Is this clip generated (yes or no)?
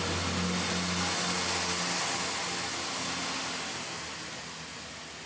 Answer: no